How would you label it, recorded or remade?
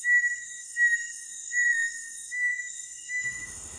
remade